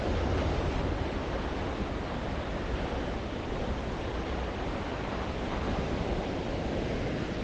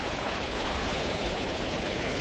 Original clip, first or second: first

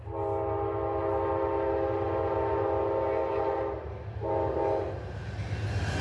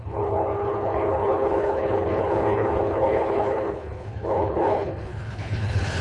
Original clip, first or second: first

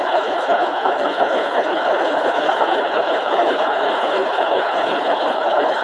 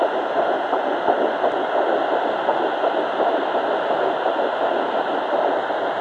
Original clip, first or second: second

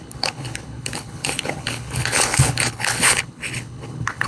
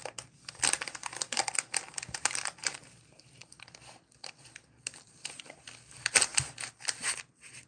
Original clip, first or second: second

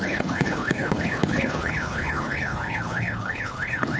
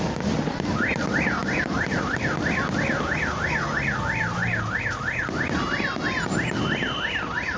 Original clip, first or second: second